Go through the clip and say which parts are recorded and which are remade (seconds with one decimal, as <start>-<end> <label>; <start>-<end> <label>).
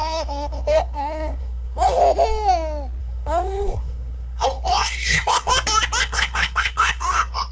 0.0-2.0 remade; 2.0-3.0 recorded; 3.0-5.5 remade; 5.5-6.0 recorded; 6.0-7.5 remade